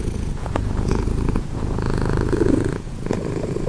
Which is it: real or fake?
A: fake